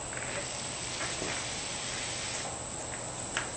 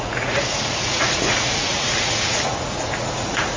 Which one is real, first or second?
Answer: first